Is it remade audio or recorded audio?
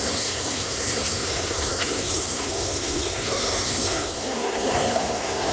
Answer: remade